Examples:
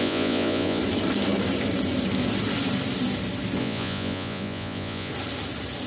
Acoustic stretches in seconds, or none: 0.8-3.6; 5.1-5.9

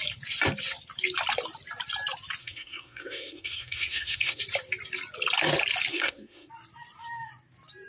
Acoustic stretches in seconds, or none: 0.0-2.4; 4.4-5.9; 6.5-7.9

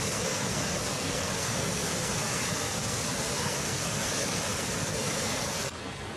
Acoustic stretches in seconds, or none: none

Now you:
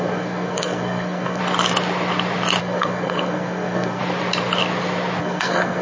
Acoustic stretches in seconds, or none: 1.4-2.6; 4.0-5.2